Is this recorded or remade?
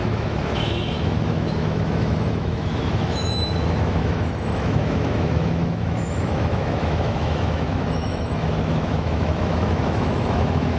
remade